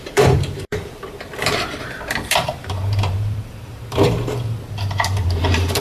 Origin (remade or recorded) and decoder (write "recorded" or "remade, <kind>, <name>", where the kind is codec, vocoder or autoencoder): remade, vocoder, BigVGAN v2